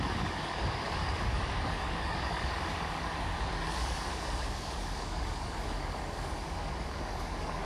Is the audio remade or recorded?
remade